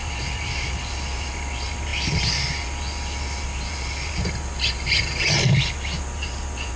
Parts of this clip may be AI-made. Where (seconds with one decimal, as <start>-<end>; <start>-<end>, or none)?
0.0-1.0